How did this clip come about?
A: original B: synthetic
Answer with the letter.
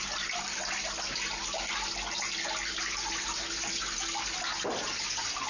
A